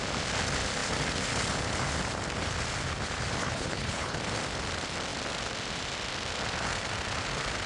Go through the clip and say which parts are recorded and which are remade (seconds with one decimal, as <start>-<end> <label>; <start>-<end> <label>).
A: 0.0-3.4 recorded; 3.4-4.2 remade; 4.2-7.7 recorded